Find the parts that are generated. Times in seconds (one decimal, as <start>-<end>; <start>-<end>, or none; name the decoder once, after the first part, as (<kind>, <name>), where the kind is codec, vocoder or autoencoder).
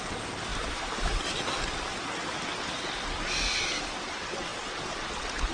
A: none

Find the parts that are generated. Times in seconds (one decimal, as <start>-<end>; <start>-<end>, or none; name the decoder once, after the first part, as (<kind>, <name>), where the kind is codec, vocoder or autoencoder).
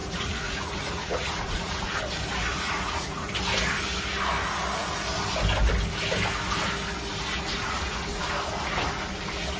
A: 0.0-2.0 (vocoder, Vocos); 2.5-3.3; 7.5-8.2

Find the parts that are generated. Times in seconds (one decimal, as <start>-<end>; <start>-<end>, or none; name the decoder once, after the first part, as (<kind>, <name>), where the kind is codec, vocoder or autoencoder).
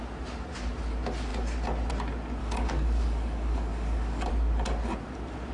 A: 2.4-4.3 (codec, DAC)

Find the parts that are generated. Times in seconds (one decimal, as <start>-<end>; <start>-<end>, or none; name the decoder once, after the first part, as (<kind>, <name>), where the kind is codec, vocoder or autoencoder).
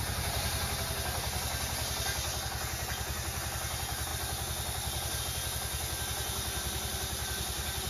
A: none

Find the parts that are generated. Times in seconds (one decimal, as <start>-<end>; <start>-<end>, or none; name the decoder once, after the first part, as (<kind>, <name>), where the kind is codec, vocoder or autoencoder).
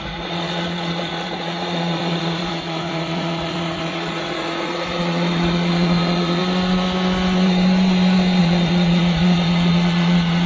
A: 0.0-6.4 (vocoder, Vocos); 8.4-10.5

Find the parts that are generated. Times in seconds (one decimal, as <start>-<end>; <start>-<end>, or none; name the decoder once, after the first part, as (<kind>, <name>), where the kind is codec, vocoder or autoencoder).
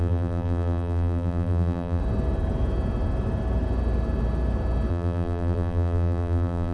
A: 0.0-2.0 (vocoder, BigVGAN v2); 4.9-6.7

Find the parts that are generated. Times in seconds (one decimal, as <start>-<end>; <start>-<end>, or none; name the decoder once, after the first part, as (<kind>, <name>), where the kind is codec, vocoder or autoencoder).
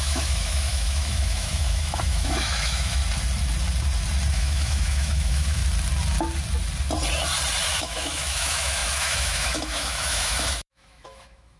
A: 0.0-3.0 (autoencoder, DAC-VAE); 4.3-5.6; 7.7-11.6